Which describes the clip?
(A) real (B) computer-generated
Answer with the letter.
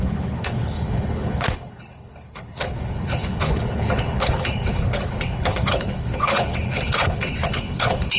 B